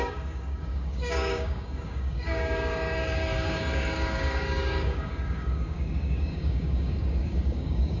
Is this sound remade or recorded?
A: remade